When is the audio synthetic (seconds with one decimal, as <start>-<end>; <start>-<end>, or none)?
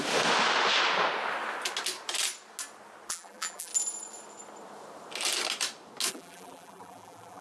3.1-3.7; 6.1-7.4